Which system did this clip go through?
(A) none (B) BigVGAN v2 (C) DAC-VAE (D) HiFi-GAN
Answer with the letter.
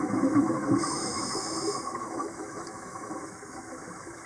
C